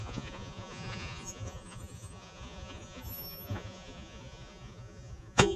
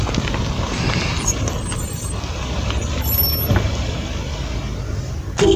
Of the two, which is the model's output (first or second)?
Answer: first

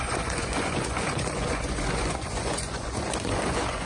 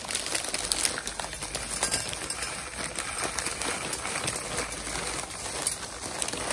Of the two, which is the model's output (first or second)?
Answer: first